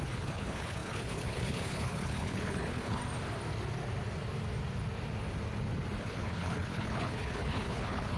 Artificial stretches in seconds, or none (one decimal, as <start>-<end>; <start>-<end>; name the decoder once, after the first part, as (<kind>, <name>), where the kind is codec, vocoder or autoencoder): 0.0-3.0 (codec, HILCodec); 6.0-8.2